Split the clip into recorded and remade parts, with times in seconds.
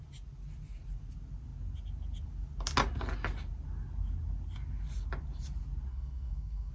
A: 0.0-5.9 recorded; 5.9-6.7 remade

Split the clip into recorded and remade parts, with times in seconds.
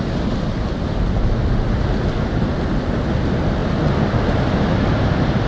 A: 0.0-5.5 recorded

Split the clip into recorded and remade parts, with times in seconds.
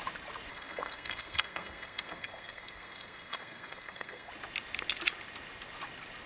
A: 0.0-0.5 recorded; 0.5-4.3 remade; 4.3-6.3 recorded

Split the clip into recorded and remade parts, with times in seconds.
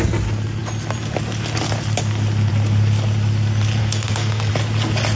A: 0.0-3.8 recorded; 3.8-4.5 remade; 4.5-5.2 recorded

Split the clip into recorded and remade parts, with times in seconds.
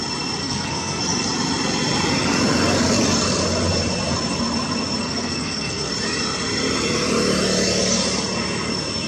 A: 0.0-0.4 recorded; 0.4-1.0 remade; 1.0-5.0 recorded; 5.0-5.9 remade; 5.9-9.1 recorded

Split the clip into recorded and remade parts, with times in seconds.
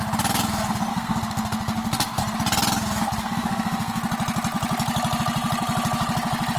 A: 0.0-0.9 recorded; 0.9-2.2 remade; 2.2-3.2 recorded; 3.2-4.0 remade; 4.0-6.6 recorded